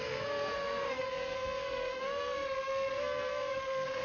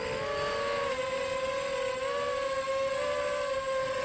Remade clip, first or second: first